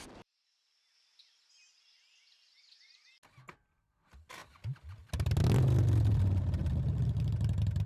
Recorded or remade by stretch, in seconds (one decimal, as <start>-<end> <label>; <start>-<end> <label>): 0.0-7.9 recorded